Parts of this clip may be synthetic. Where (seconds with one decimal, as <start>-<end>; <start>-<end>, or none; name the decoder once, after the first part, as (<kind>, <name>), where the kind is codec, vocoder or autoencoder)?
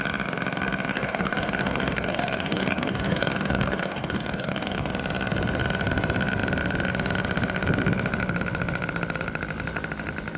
0.9-4.9 (codec, DAC)